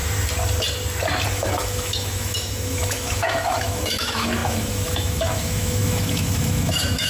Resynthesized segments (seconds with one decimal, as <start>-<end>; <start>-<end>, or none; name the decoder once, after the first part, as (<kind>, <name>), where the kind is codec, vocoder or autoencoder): 1.3-7.1 (autoencoder, DAC-VAE)